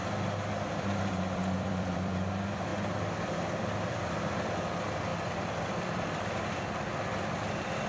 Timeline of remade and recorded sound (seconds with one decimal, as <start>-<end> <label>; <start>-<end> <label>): 0.0-0.7 recorded; 0.7-2.7 remade; 2.7-3.6 recorded; 3.6-5.1 remade; 5.1-5.7 recorded; 5.7-7.9 remade